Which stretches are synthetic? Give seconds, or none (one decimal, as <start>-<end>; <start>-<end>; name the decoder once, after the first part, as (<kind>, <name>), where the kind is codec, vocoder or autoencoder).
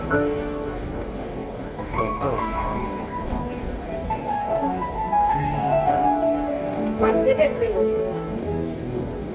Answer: 0.0-9.3 (codec, DAC)